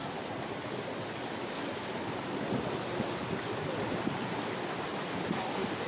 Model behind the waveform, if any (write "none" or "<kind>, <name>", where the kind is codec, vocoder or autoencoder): none